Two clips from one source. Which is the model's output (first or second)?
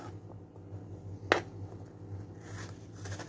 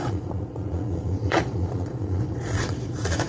second